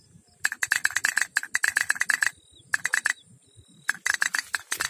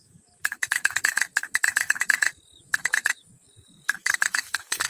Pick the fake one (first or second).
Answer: second